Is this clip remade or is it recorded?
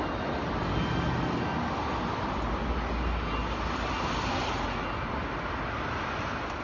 recorded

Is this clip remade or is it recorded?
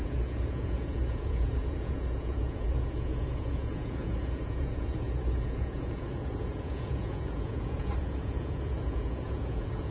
remade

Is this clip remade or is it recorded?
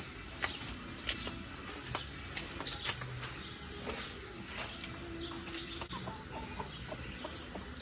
recorded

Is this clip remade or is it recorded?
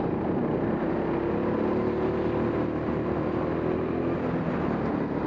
recorded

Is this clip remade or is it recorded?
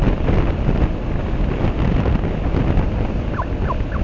recorded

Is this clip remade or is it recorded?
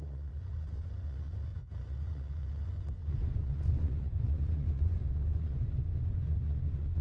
remade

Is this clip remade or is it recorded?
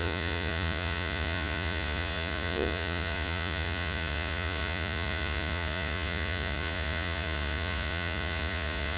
remade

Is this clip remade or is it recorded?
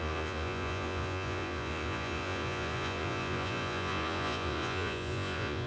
remade